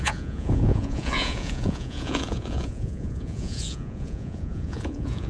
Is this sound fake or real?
fake